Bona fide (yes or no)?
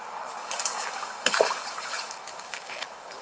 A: no